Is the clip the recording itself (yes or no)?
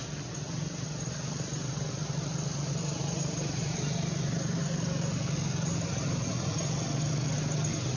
yes